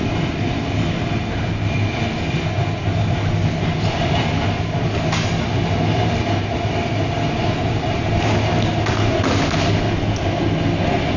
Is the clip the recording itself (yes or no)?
yes